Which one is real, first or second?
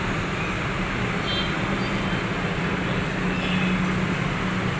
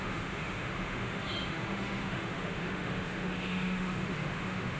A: first